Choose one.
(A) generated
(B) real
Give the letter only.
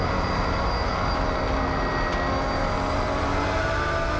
B